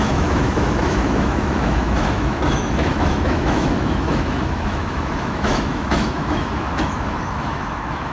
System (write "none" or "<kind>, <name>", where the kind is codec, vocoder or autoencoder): autoencoder, DAC-VAE